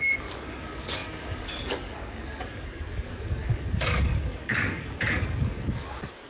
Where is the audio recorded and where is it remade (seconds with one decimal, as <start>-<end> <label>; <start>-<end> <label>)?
0.0-6.3 remade